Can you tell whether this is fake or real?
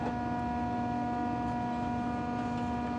real